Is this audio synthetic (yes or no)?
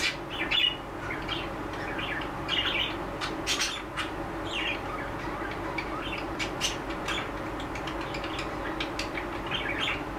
no